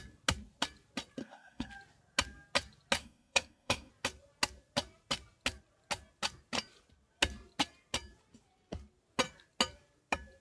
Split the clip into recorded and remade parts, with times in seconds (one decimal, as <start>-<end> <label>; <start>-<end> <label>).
0.0-1.2 recorded; 1.2-1.7 remade; 1.7-3.0 recorded; 3.0-3.9 remade; 3.9-10.4 recorded